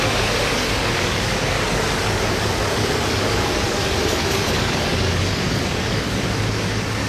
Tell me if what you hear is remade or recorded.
remade